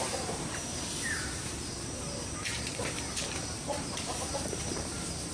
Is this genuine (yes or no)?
no